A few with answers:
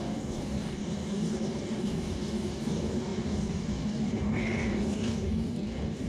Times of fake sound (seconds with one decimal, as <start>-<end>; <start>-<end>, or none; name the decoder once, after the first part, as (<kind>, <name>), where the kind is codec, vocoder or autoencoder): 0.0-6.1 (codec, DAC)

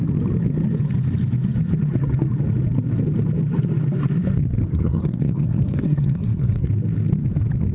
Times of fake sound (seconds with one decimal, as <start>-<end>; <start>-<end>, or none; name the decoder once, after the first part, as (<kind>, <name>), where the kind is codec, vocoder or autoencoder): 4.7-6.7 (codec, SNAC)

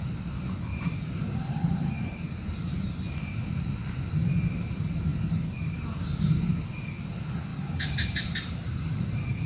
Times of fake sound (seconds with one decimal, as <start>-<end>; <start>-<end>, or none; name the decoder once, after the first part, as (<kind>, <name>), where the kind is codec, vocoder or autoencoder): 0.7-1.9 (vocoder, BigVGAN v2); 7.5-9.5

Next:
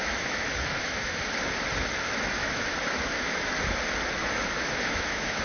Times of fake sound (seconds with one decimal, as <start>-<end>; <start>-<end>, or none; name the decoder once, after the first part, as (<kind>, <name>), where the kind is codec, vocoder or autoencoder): 0.0-1.2 (autoencoder, DAC-VAE); 2.4-3.5; 4.2-5.4